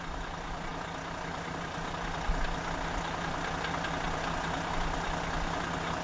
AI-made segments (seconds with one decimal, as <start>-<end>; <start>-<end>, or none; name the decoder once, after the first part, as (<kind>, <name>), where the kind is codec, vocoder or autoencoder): none